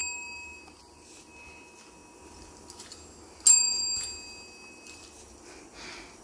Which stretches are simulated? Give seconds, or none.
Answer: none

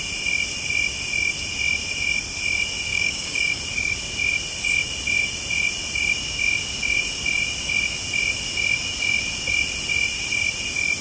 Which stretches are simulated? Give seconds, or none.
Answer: 2.9-3.6 (codec, DAC)

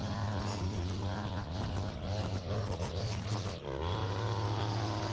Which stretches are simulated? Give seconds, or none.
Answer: none

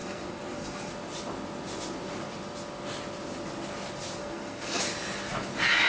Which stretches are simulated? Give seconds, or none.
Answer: 0.0-0.9 (codec, SNAC); 4.2-4.8

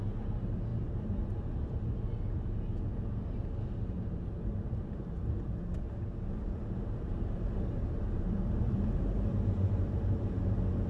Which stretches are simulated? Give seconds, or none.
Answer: 0.7-1.9 (vocoder, BigVGAN v2); 6.0-10.5

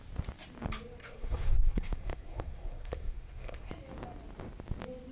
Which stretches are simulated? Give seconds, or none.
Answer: 1.0-3.7 (codec, SNAC)

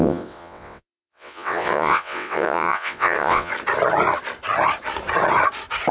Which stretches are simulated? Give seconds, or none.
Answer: 0.0-3.5 (vocoder, WaveNeXt)

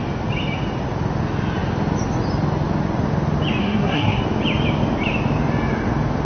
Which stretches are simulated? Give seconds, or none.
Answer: 3.6-4.2 (codec, SNAC)